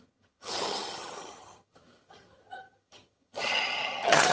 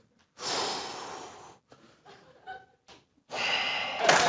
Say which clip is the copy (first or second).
first